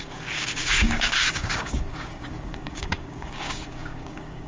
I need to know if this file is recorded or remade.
remade